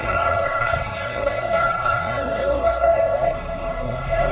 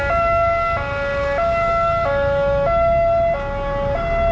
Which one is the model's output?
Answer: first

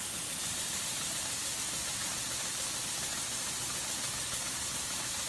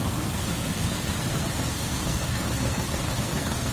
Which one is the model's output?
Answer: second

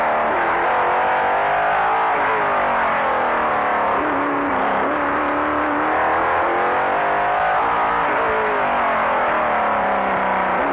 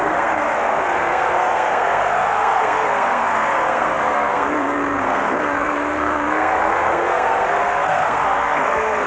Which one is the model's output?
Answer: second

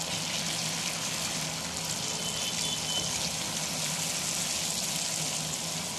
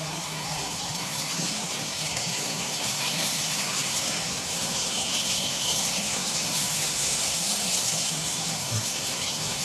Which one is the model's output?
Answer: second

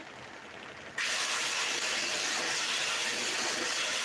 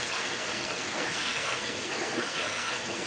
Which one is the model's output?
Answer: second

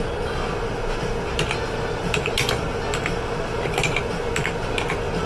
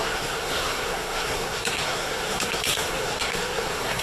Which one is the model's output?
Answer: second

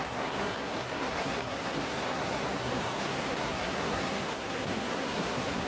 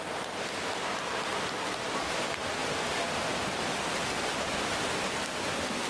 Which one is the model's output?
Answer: first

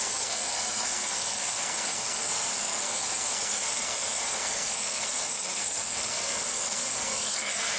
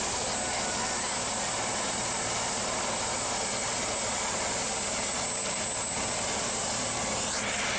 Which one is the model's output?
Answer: first